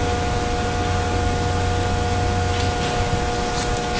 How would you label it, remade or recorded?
recorded